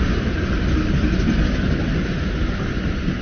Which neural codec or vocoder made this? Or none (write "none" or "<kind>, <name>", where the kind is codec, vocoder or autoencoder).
none